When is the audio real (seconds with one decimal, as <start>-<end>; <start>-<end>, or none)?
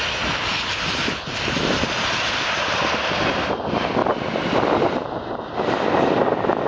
0.0-6.7